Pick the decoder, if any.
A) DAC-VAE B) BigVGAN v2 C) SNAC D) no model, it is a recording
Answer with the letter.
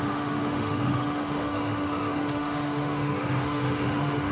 A